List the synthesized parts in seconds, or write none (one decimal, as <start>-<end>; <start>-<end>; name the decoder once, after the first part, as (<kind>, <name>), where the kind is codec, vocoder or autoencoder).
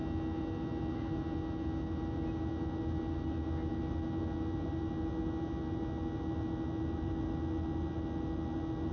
none